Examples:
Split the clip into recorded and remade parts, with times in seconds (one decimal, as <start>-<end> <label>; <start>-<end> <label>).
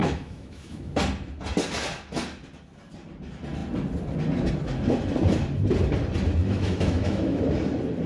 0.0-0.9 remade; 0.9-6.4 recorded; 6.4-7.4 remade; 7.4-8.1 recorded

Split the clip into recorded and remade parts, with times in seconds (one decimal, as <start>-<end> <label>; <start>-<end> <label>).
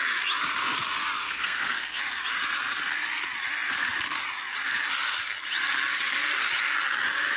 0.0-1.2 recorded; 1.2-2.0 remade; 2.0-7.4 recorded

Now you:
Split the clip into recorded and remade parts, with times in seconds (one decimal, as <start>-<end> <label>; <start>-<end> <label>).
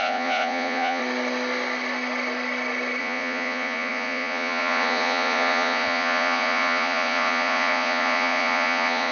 0.0-1.0 remade; 1.0-3.0 recorded; 3.0-9.1 remade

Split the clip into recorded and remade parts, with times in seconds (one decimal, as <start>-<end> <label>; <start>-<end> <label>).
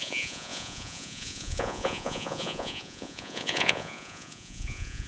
0.0-5.1 remade